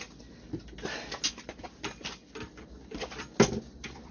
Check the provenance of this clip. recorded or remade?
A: recorded